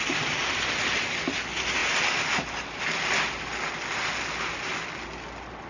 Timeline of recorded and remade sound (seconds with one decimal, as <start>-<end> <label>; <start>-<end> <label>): 0.0-5.7 recorded